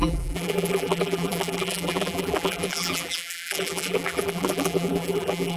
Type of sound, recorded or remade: remade